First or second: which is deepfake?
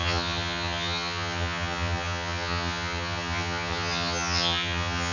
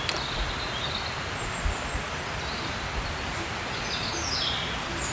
first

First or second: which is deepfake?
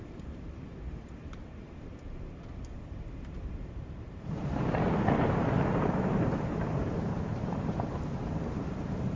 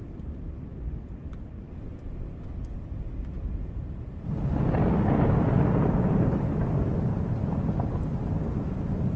first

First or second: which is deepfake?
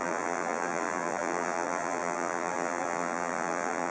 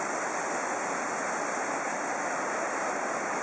first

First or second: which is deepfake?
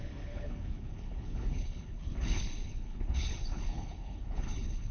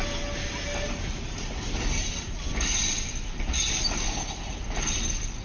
first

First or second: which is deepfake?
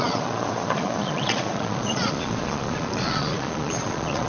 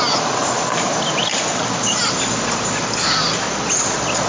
first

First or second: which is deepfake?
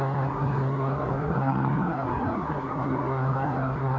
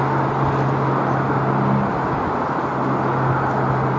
first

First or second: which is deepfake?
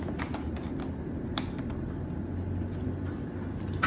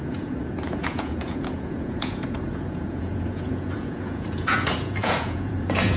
second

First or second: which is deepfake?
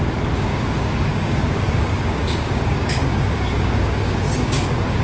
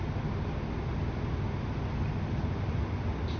first